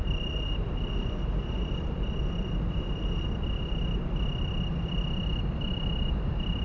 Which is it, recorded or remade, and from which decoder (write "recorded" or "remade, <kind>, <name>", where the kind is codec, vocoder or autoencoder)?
recorded